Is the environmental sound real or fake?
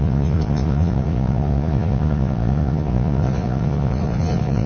fake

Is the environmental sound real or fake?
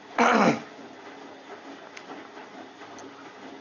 real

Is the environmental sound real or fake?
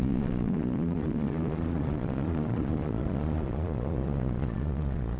fake